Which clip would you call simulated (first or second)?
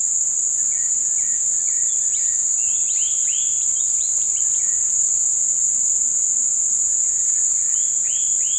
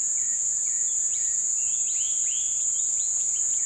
second